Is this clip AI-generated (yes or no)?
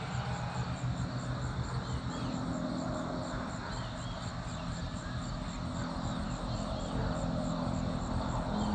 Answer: no